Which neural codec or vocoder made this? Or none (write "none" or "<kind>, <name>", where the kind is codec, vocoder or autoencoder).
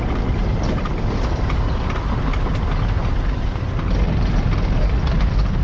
none